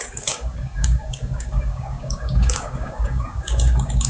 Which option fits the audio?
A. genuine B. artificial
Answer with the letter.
B